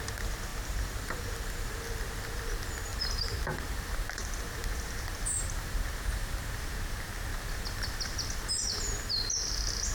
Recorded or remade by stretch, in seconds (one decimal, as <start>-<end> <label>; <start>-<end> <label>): 0.0-0.5 recorded; 0.5-1.8 remade; 1.8-2.9 recorded; 2.9-6.7 remade; 6.7-7.3 recorded; 7.3-9.0 remade; 9.0-9.9 recorded